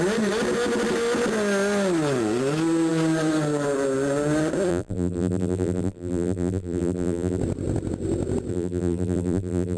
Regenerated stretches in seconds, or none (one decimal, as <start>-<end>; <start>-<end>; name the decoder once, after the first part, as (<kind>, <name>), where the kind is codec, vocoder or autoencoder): 4.7-7.4 (vocoder, BigVGAN v2); 8.5-9.8